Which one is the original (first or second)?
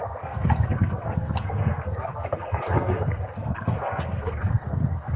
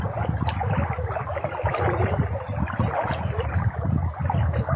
second